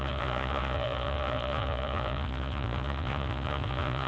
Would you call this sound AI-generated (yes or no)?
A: yes